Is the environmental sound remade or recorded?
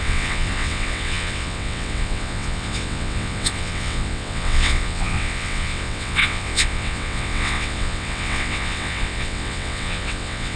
remade